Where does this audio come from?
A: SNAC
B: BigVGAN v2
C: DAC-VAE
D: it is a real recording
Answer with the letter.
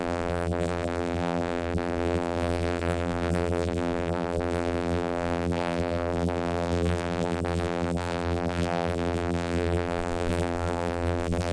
B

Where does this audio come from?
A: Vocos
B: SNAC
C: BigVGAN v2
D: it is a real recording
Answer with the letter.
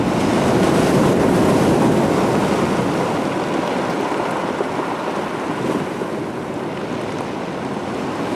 D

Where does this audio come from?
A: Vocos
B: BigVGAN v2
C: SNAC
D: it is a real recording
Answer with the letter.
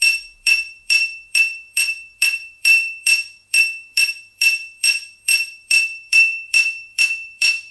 B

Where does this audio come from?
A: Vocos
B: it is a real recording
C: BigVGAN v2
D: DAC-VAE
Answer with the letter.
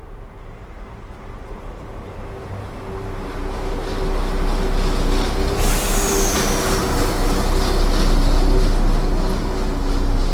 B